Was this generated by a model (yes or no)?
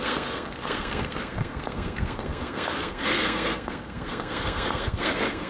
yes